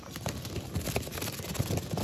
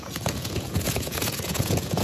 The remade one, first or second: second